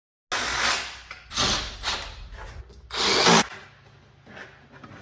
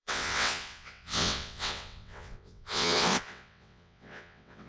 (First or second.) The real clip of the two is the first